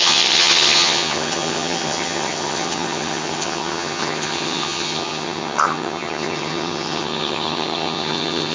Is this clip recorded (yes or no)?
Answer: no